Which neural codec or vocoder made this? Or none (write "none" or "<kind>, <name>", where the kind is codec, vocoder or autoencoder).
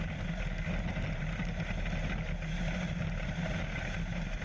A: none